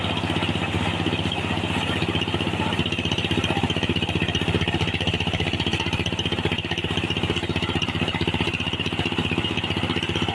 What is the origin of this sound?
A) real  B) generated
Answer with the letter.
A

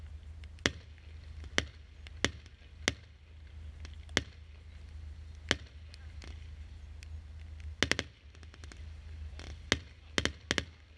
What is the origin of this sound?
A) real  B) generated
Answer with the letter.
A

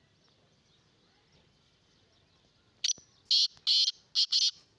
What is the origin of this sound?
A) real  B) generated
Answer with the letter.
A